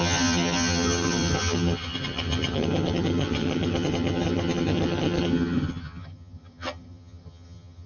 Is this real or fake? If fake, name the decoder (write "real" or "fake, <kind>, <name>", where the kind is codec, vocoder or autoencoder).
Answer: fake, vocoder, HiFi-GAN